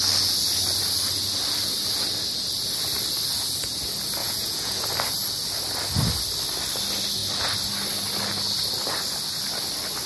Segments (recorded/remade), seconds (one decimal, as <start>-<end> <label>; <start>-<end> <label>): 0.0-4.2 recorded; 4.2-4.9 remade; 4.9-10.1 recorded